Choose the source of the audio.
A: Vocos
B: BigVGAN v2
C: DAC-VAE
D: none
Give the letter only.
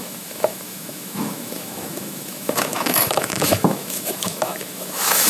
C